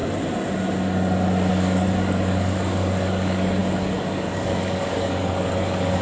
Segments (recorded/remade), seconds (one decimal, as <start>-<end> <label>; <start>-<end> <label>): 0.0-1.5 recorded; 1.5-6.0 remade